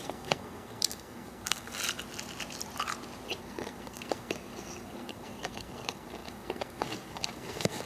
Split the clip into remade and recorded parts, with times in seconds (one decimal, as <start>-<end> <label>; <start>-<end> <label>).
0.0-1.8 remade; 1.8-3.4 recorded; 3.4-7.9 remade